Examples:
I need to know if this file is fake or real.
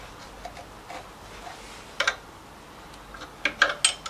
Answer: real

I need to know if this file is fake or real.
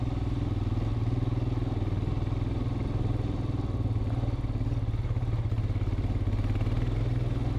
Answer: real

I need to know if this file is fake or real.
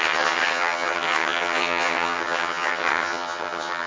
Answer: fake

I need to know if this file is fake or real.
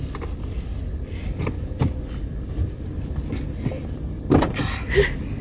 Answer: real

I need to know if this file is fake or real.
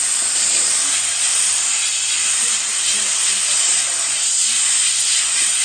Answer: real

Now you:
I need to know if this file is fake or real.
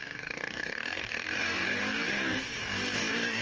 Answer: fake